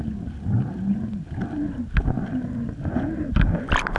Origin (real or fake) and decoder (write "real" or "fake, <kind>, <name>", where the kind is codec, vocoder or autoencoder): real